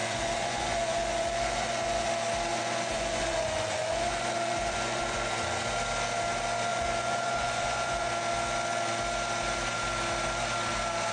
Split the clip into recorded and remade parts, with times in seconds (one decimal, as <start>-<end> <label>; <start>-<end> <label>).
0.0-2.1 remade; 2.1-2.5 recorded; 2.5-5.3 remade; 5.3-6.7 recorded; 6.7-8.1 remade; 8.1-11.1 recorded